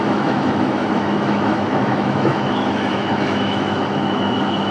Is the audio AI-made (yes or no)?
yes